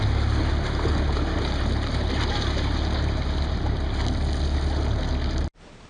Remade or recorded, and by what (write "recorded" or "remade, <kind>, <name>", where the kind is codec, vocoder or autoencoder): recorded